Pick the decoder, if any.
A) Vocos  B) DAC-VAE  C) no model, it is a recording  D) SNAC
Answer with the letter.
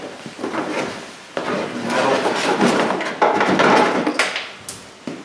C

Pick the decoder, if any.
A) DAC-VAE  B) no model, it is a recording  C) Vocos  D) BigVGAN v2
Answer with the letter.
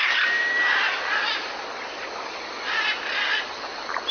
B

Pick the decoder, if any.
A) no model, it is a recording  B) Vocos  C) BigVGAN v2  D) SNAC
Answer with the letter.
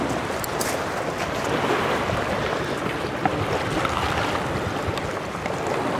A